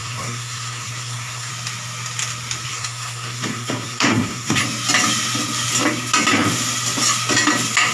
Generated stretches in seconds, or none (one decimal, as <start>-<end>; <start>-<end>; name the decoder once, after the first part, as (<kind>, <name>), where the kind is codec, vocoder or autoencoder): 0.0-1.5 (codec, SNAC); 2.7-4.6